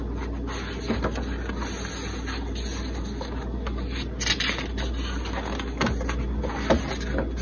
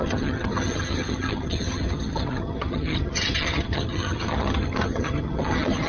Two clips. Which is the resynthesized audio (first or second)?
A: second